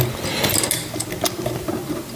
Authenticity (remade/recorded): recorded